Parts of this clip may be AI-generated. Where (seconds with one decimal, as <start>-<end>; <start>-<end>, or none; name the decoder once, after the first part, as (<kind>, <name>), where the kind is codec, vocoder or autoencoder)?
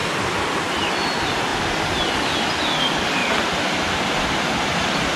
0.6-1.5 (vocoder, BigVGAN v2); 2.5-3.2